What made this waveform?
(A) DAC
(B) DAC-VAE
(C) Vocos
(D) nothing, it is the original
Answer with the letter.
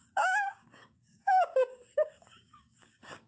A